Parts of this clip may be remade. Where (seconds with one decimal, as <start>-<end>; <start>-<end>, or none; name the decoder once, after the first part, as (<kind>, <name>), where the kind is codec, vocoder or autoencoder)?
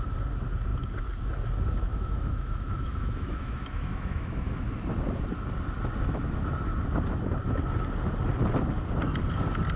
1.9-4.7 (autoencoder, DAC-VAE)